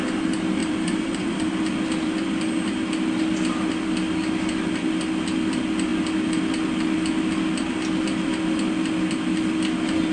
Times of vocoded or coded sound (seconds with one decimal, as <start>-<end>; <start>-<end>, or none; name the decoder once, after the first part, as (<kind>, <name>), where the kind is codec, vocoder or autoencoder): 0.6-2.4 (vocoder, BigVGAN v2)